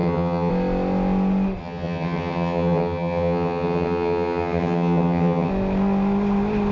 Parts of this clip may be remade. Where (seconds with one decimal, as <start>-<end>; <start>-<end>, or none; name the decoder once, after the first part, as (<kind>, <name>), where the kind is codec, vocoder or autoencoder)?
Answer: 0.0-0.5 (vocoder, HiFi-GAN); 1.6-5.5